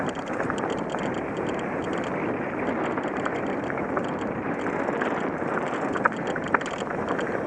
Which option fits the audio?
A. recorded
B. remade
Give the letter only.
A